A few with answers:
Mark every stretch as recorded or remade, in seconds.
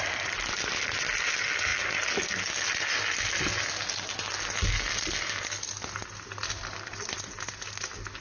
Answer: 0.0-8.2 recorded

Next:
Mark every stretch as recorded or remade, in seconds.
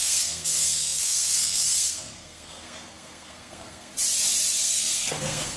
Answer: 0.0-3.9 remade; 3.9-4.6 recorded; 4.6-5.6 remade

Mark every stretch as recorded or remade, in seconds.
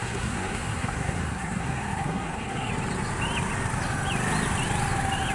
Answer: 0.0-2.7 remade; 2.7-5.3 recorded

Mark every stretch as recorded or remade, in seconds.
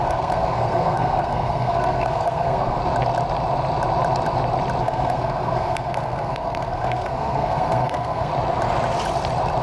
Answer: 0.0-2.8 remade; 2.8-4.8 recorded; 4.8-8.3 remade; 8.3-9.6 recorded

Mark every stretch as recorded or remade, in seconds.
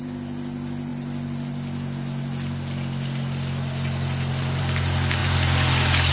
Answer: 0.0-6.1 recorded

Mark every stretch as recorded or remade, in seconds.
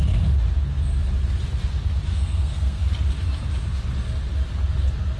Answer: 0.0-2.1 recorded; 2.1-2.8 remade; 2.8-5.2 recorded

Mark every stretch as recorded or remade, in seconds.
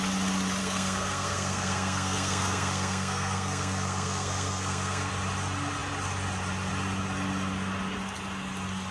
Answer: 0.0-0.6 recorded; 0.6-5.1 remade; 5.1-8.9 recorded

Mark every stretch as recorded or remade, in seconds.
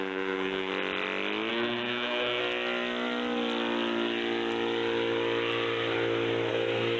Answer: 0.0-0.7 remade; 0.7-1.5 recorded; 1.5-2.4 remade; 2.4-6.5 recorded; 6.5-7.0 remade